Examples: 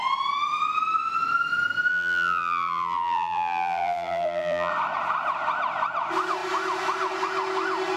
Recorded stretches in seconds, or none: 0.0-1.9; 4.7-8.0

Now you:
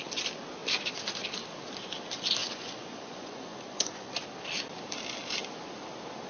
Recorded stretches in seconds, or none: 0.0-2.4; 4.1-6.3

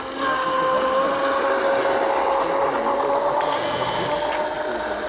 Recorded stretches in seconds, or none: 0.0-5.1